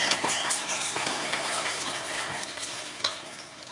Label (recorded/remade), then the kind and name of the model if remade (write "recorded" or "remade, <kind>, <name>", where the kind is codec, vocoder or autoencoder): remade, codec, SNAC